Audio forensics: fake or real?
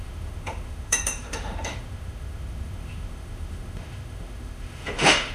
fake